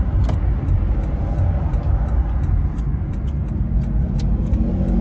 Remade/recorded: recorded